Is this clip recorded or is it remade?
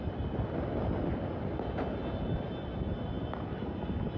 recorded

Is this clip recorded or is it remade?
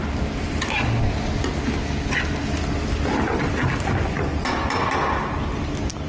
recorded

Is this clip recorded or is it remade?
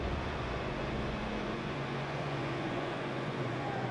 remade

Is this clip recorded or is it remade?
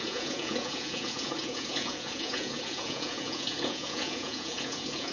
remade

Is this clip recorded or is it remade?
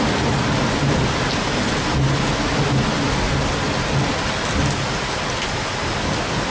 recorded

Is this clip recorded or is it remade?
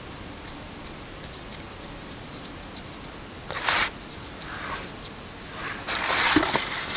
recorded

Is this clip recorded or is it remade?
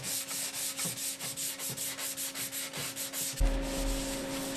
recorded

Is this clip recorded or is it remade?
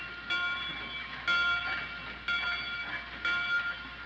recorded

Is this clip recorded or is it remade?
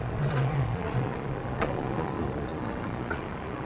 remade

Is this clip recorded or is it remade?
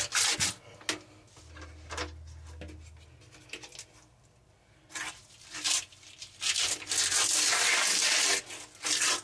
recorded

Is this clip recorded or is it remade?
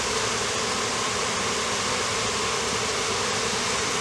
recorded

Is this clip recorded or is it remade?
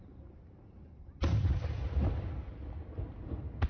recorded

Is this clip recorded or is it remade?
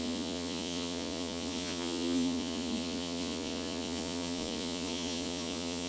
remade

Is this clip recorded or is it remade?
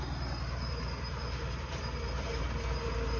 recorded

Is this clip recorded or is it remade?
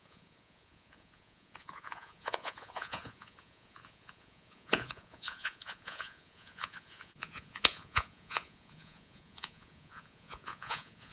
remade